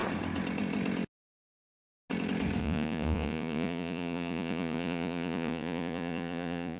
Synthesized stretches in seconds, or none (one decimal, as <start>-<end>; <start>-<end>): 2.6-6.8